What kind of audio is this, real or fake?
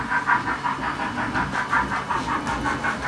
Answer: real